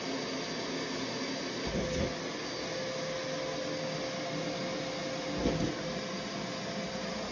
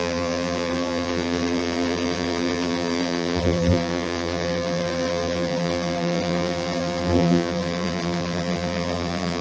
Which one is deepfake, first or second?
second